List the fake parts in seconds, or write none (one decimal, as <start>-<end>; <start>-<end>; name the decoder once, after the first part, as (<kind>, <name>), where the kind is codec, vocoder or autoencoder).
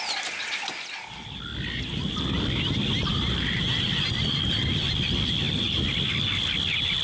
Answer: none